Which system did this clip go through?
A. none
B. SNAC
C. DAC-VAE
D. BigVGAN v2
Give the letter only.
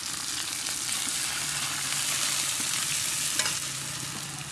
A